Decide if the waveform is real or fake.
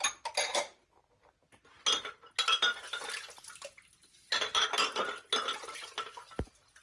real